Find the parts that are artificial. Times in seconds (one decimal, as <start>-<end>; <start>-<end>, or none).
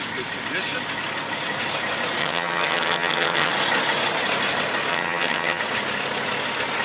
2.2-3.5; 4.9-5.6